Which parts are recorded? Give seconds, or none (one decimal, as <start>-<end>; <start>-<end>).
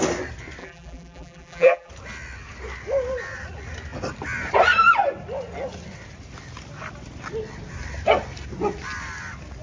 0.0-0.6; 1.9-9.6